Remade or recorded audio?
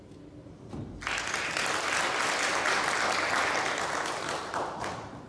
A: recorded